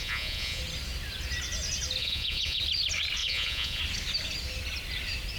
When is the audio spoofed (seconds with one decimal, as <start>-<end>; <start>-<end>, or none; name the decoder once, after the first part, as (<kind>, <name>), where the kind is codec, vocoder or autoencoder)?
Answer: 0.0-0.6 (vocoder, Vocos); 2.0-2.6; 3.2-3.8

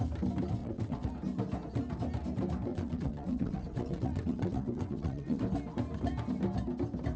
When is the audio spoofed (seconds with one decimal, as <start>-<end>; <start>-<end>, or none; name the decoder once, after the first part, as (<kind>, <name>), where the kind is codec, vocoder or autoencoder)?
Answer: 0.6-1.1 (vocoder, WaveNeXt); 2.7-5.4

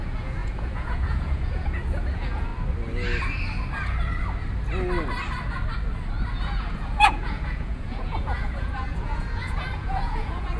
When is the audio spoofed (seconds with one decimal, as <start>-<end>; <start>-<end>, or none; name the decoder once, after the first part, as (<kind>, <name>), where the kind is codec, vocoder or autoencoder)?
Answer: 0.0-2.5 (vocoder, Vocos); 6.3-10.6

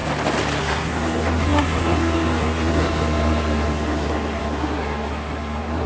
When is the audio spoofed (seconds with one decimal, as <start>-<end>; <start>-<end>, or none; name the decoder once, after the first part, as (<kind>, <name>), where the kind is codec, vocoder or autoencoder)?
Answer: 0.6-5.9 (codec, SNAC)

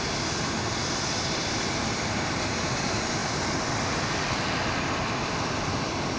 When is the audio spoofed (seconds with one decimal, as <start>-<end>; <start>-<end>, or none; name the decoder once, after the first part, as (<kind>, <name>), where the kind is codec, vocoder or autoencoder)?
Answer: none

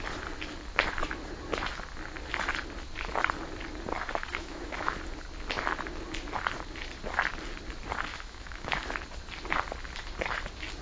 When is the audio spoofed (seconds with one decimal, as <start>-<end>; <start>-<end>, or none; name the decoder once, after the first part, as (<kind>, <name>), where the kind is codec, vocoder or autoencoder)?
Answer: 4.2-4.9 (autoencoder, DAC-VAE); 8.1-8.8